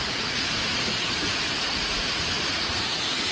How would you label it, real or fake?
fake